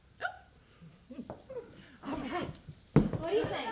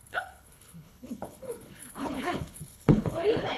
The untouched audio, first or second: first